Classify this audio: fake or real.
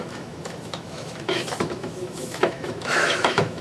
fake